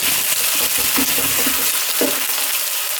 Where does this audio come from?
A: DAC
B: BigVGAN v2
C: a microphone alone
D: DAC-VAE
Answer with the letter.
C